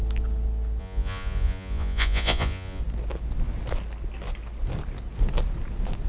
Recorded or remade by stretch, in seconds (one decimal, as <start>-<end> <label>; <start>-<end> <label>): 0.0-0.8 recorded; 0.8-2.8 remade; 2.8-6.1 recorded